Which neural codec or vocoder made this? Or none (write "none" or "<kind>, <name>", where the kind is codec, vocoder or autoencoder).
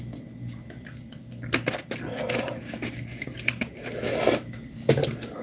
none